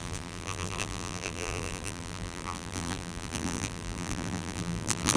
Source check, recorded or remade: remade